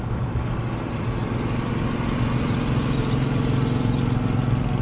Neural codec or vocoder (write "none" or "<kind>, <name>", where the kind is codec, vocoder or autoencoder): none